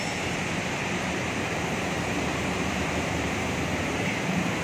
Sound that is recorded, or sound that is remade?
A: remade